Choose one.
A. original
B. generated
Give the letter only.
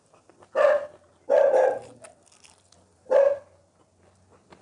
A